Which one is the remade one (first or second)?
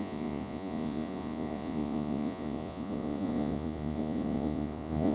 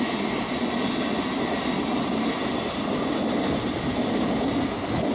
first